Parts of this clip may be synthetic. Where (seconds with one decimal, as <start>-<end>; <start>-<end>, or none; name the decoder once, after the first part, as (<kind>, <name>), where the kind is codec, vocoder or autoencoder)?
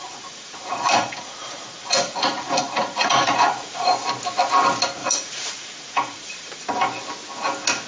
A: 0.0-3.9 (vocoder, Vocos); 5.0-6.6